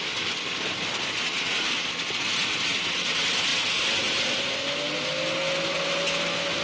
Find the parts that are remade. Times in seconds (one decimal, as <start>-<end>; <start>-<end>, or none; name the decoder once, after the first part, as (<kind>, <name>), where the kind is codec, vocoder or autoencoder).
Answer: none